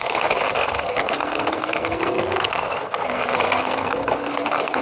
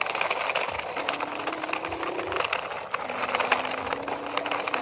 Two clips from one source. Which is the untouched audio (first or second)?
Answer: second